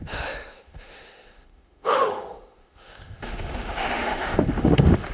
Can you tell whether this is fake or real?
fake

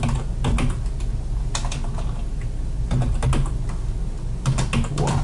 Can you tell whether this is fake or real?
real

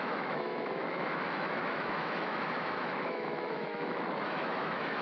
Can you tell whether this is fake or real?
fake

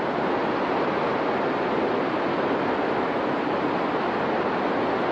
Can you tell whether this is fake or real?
real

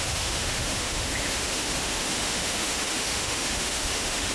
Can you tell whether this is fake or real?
fake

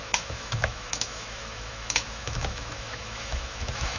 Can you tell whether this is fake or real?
fake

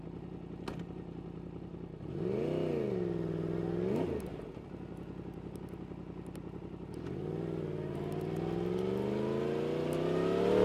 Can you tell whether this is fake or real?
real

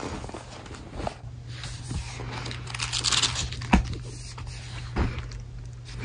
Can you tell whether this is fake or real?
real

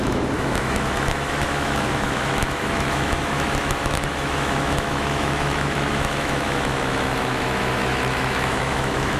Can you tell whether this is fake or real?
fake